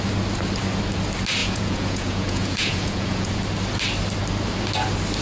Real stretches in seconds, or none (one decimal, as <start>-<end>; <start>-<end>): 0.0-1.4; 3.3-5.2